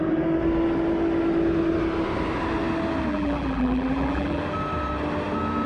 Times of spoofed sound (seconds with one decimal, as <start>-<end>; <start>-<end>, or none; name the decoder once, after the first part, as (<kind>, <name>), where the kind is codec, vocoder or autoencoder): 3.1-4.4 (vocoder, BigVGAN v2)